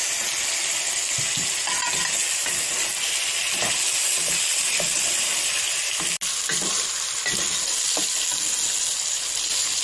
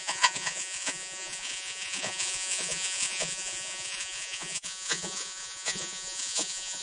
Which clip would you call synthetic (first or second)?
second